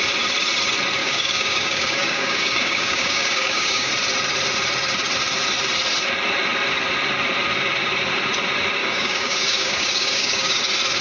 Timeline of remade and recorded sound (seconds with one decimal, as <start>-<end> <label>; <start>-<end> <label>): 0.0-1.0 recorded; 1.0-3.9 remade; 3.9-8.8 recorded; 8.8-10.6 remade; 10.6-11.0 recorded